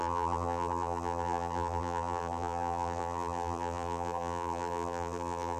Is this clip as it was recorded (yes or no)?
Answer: no